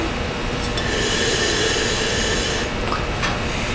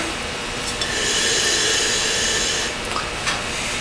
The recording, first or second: first